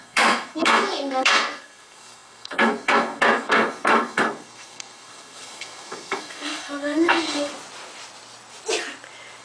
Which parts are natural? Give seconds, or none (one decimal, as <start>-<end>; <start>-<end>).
7.5-9.4